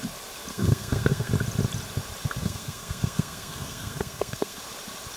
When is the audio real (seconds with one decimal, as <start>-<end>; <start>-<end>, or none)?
0.0-0.5; 1.3-2.4; 4.6-5.2